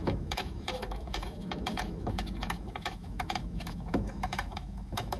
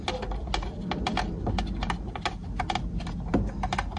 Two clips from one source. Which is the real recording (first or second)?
second